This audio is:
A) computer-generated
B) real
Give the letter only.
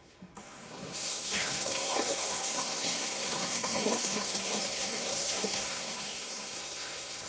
A